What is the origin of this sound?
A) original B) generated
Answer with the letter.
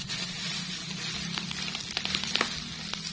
A